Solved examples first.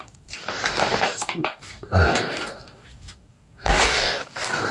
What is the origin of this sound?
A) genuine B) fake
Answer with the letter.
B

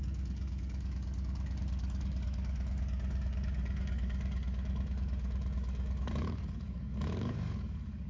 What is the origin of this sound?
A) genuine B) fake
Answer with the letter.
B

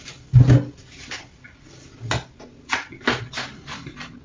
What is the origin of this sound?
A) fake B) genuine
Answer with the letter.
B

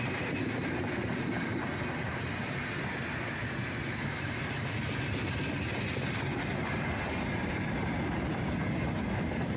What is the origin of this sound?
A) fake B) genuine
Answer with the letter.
B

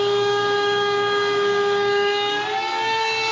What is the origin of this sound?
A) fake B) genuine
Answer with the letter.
A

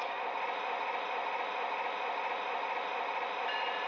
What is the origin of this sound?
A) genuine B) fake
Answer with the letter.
A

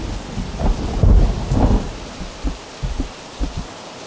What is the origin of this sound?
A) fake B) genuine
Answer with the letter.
B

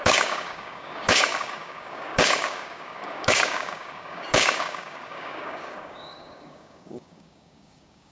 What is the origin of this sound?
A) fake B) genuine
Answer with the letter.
A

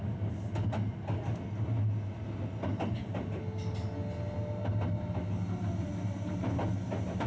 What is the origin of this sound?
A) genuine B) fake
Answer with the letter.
A